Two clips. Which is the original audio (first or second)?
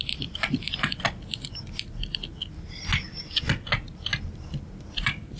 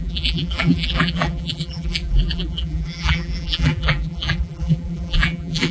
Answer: first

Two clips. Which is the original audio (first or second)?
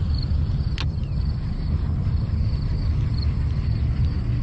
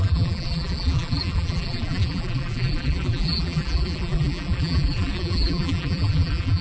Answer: first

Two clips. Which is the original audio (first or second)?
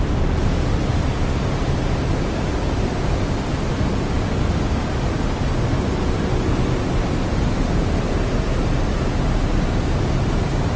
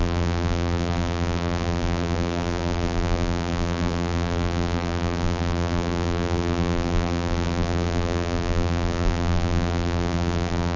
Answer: first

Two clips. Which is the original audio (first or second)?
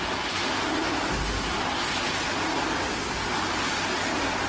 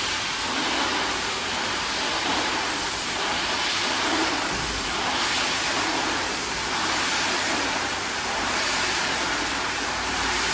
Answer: first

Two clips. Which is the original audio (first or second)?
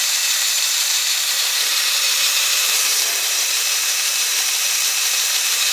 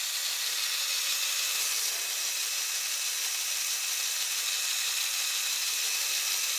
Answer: second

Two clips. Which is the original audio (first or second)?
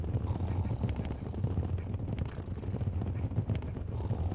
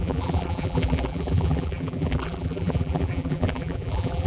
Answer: first